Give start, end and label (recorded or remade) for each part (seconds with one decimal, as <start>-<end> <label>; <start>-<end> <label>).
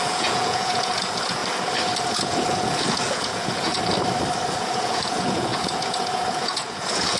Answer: 0.0-1.4 remade; 1.4-2.0 recorded; 2.0-3.8 remade; 3.8-4.5 recorded; 4.5-7.2 remade